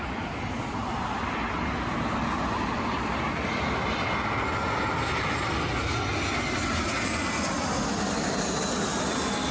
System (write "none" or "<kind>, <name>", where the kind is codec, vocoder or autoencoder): none